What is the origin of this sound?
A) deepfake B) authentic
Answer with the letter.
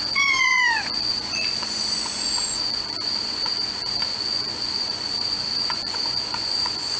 A